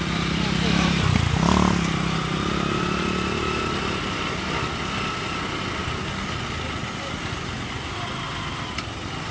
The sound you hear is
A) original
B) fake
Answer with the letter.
A